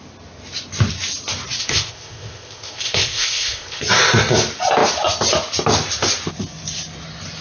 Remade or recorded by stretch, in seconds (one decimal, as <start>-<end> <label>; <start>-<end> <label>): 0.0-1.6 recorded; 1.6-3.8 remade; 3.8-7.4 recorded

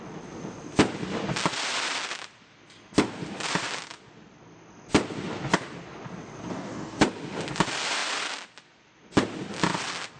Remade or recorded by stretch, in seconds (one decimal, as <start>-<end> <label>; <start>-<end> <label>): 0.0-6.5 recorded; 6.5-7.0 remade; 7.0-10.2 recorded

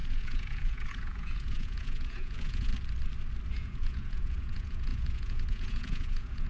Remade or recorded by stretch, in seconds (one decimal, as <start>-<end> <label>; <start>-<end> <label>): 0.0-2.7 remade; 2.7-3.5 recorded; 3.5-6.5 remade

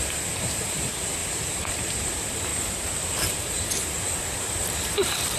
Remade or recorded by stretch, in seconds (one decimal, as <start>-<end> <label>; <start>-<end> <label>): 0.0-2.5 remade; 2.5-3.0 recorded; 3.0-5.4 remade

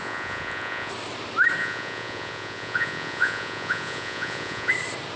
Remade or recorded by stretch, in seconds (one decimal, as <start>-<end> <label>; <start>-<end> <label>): 0.0-0.9 remade; 0.9-1.6 recorded; 1.6-4.7 remade; 4.7-5.2 recorded